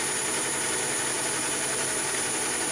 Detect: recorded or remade recorded